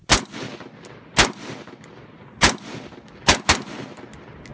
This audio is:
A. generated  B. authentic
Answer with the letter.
B